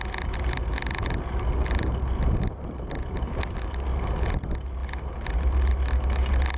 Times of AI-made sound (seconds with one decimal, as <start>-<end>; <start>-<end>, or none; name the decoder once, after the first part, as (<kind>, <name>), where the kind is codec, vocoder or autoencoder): none